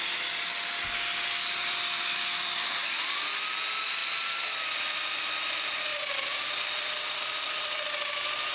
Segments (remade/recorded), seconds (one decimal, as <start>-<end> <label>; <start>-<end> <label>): 0.0-1.6 recorded; 1.6-2.9 remade; 2.9-5.9 recorded; 5.9-8.5 remade